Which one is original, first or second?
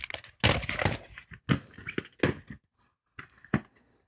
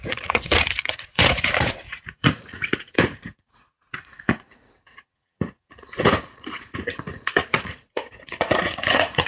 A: first